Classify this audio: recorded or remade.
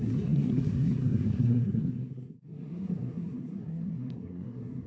remade